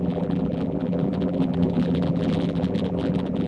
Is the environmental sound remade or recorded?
remade